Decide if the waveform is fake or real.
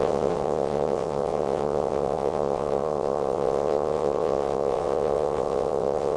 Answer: fake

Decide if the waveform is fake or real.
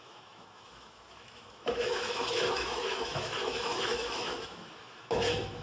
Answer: fake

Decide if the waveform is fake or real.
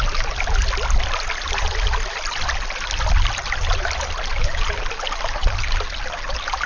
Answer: real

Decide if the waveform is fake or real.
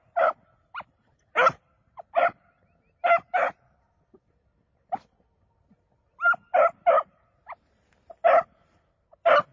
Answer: real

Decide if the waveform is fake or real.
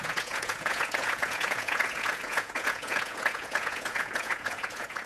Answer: fake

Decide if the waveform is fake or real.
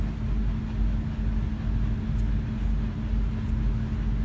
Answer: real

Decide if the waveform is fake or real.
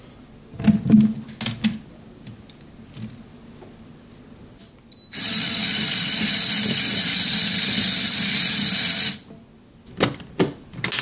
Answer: real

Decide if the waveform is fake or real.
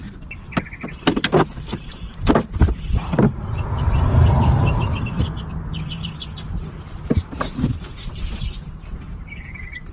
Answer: real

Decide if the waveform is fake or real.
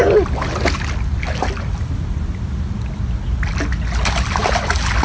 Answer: real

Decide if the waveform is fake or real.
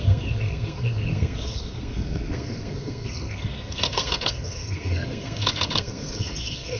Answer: fake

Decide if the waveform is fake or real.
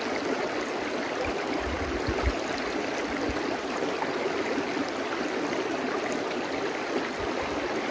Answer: real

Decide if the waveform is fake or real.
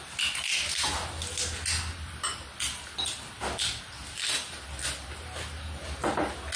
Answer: real